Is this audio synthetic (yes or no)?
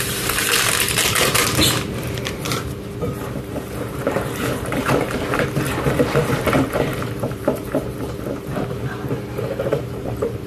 yes